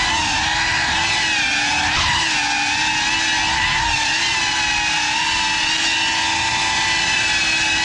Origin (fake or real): real